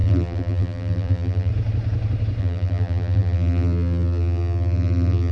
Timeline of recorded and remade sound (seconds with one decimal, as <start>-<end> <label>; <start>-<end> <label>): 0.0-1.5 remade; 1.5-2.4 recorded; 2.4-5.3 remade